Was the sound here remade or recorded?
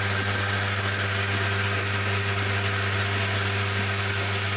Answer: recorded